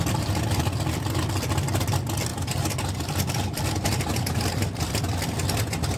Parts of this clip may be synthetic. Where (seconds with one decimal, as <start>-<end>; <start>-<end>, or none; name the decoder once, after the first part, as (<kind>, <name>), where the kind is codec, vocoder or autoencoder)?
2.3-4.9 (vocoder, BigVGAN v2)